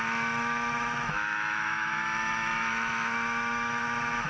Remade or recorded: remade